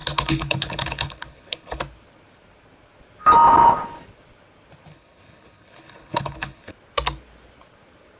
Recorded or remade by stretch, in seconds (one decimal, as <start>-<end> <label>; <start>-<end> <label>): 0.0-1.8 remade; 1.8-4.9 recorded; 4.9-6.7 remade; 6.7-8.2 recorded